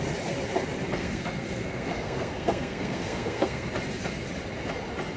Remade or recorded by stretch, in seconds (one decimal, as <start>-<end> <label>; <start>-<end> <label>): 0.0-1.0 recorded; 1.0-3.7 remade; 3.7-5.2 recorded